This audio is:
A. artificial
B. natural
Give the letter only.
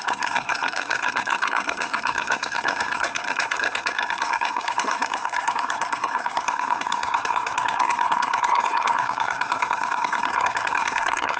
A